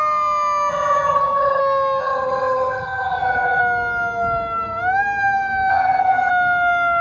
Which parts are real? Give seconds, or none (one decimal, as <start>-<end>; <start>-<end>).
0.0-0.7; 1.6-2.0; 3.6-5.7; 6.3-7.0